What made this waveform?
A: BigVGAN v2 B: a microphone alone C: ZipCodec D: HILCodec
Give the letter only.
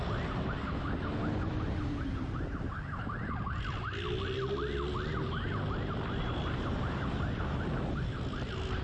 B